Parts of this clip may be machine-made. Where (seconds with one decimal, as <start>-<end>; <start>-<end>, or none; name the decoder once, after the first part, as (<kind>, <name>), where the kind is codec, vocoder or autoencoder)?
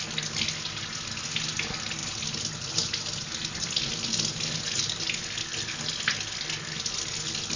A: none